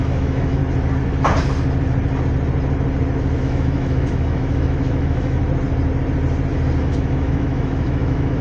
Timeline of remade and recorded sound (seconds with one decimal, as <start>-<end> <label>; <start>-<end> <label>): 0.0-0.6 remade; 0.6-3.4 recorded; 3.4-5.4 remade; 5.4-6.8 recorded; 6.8-8.4 remade